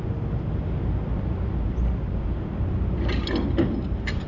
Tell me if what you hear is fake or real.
real